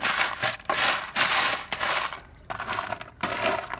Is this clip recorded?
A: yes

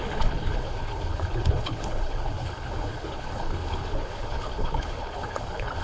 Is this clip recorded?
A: no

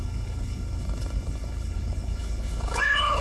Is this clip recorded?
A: no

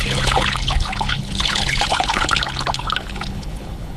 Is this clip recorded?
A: no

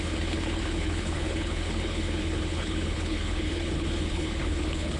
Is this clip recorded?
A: no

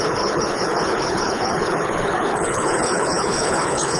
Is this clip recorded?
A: no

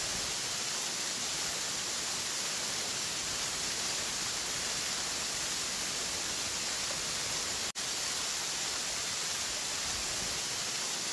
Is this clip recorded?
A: yes